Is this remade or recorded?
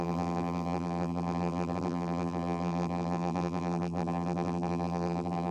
remade